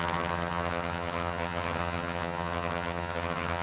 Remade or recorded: remade